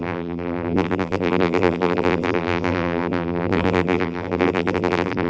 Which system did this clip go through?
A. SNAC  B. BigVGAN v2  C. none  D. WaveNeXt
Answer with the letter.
B